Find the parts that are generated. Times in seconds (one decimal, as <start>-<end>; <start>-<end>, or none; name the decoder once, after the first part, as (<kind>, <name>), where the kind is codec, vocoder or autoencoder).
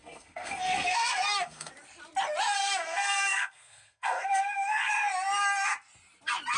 0.0-1.7 (codec, SNAC); 2.6-4.9